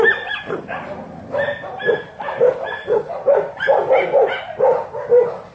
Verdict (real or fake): real